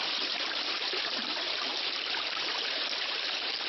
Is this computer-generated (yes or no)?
yes